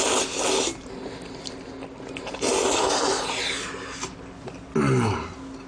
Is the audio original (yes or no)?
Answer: yes